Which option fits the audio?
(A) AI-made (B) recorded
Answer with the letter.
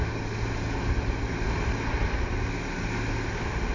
B